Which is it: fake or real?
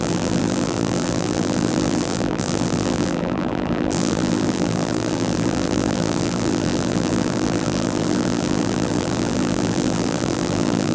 fake